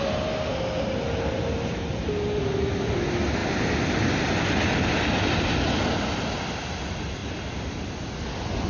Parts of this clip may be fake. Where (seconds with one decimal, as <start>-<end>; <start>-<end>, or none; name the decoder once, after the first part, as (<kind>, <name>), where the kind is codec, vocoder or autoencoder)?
none